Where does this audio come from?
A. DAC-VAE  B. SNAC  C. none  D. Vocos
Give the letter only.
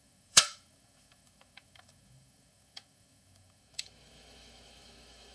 A